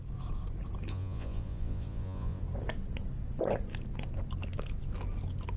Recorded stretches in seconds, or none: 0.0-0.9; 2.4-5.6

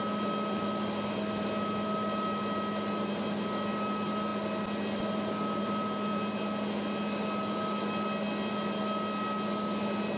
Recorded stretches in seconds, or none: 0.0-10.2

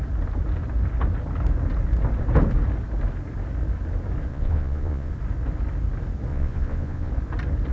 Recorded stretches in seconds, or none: 0.0-4.3; 5.1-6.3; 7.1-7.7

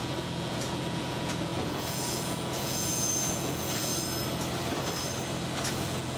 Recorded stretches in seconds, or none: 3.9-5.7

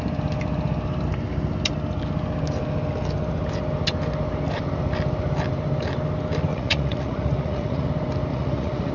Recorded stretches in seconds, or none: 0.0-6.5; 7.9-8.3